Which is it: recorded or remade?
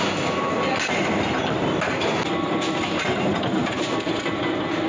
recorded